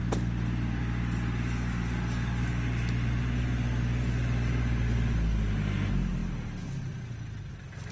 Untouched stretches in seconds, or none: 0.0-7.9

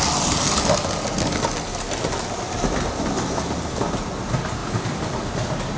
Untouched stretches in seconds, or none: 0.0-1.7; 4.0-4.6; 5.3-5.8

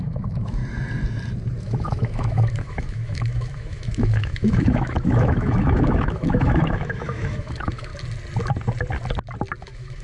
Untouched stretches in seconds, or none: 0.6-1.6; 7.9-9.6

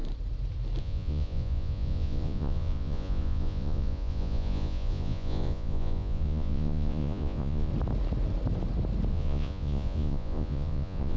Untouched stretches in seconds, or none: 0.0-0.8; 7.7-9.1

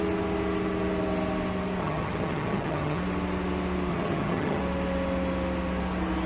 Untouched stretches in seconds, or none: 0.0-1.8; 3.0-3.9; 4.6-6.3

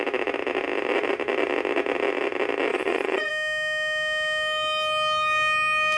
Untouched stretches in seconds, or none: 0.0-2.7; 3.3-6.0

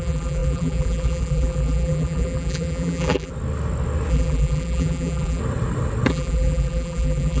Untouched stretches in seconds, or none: 3.3-4.1; 5.4-6.1

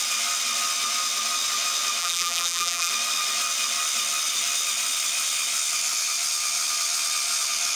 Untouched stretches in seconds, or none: 0.0-2.0; 2.9-7.8